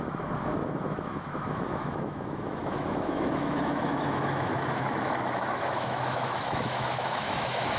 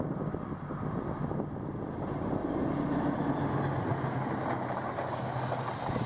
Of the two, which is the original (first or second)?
second